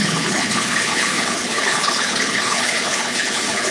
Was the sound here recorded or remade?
remade